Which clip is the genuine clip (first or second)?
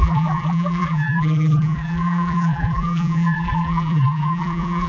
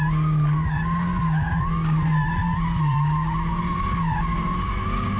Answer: second